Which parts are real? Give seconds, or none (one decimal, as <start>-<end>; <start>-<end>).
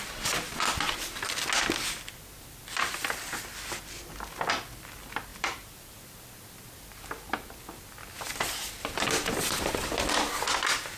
0.0-5.3; 5.9-11.0